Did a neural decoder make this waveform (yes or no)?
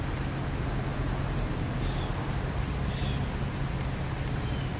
no